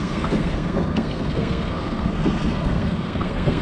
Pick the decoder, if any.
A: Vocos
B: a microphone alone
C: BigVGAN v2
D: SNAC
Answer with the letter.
D